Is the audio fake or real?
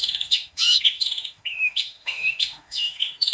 fake